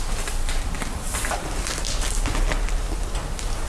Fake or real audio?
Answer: real